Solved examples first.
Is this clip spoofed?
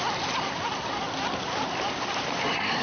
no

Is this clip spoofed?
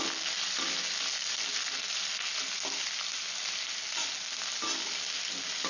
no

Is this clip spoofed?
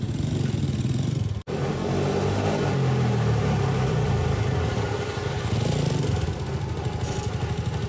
no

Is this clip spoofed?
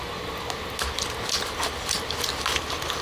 no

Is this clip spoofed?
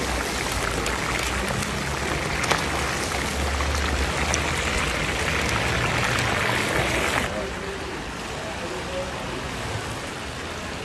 no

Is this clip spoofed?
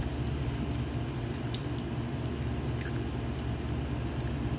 no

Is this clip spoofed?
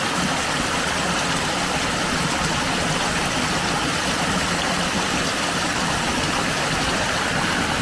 no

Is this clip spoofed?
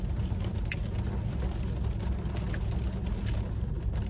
no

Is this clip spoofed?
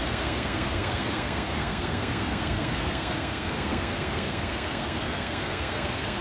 yes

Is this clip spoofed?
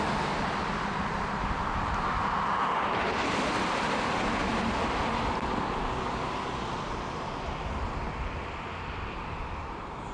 no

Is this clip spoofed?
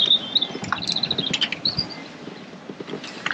no